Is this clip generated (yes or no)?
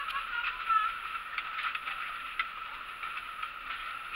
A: no